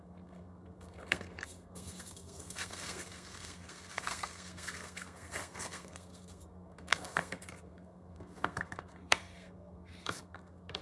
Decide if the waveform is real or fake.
fake